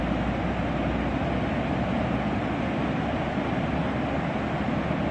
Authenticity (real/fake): real